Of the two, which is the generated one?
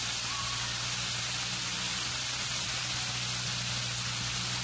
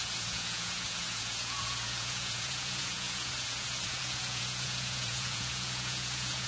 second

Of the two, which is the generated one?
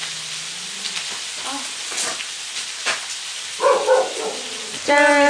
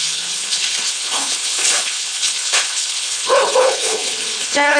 second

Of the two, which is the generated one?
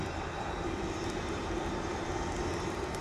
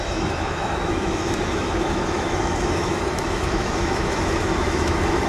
second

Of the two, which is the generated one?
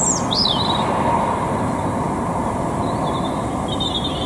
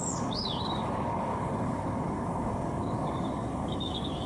second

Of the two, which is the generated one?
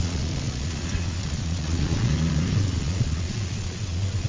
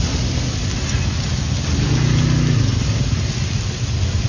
first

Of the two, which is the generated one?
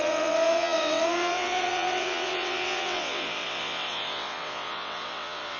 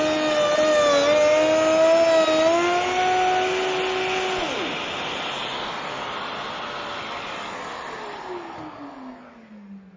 first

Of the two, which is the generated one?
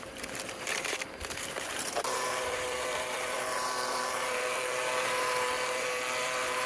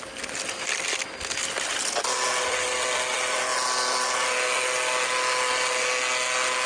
first